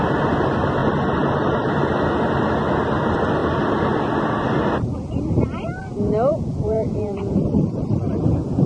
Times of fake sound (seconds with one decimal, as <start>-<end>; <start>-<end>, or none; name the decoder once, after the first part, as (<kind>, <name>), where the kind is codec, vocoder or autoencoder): 6.3-7.2 (vocoder, Vocos)